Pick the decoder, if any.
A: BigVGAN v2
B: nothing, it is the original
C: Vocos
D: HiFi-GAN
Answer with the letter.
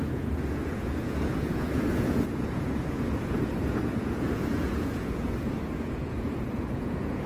C